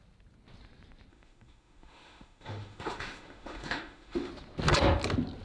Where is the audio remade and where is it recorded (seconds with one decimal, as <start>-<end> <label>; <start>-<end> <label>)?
0.0-1.1 recorded; 1.1-4.3 remade; 4.3-5.4 recorded